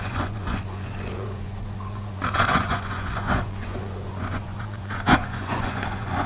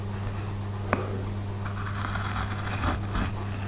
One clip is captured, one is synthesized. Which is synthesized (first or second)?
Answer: first